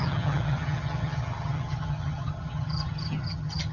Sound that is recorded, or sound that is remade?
remade